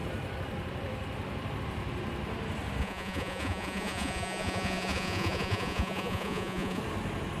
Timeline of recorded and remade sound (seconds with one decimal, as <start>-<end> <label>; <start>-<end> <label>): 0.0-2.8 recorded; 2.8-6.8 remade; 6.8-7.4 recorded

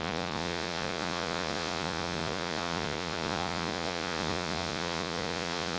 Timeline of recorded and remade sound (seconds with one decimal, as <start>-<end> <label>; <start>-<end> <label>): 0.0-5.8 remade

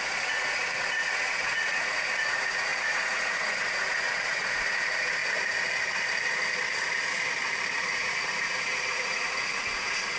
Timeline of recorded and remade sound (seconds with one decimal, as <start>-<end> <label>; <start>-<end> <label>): 0.0-5.2 remade; 5.2-7.8 recorded; 7.8-10.2 remade

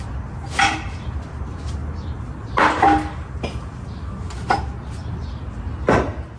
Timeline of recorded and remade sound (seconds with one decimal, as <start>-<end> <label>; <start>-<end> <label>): 0.0-6.4 recorded

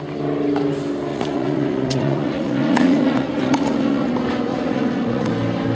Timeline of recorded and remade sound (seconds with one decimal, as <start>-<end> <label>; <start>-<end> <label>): 0.0-1.1 recorded; 1.1-4.1 remade; 4.1-4.5 recorded; 4.5-5.3 remade; 5.3-5.7 recorded